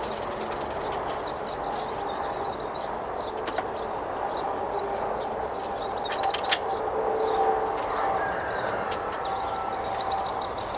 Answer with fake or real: real